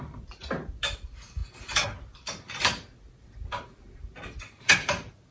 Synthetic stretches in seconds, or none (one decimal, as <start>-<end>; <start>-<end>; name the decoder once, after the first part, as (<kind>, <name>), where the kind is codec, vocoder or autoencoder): none